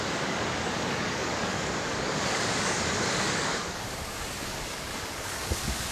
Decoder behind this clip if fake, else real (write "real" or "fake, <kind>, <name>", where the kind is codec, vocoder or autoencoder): fake, codec, DAC